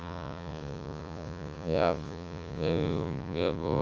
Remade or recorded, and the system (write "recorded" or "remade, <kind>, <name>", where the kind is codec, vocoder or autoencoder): remade, vocoder, Vocos